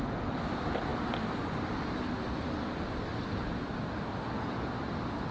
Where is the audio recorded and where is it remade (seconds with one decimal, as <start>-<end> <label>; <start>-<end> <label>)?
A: 0.0-5.3 recorded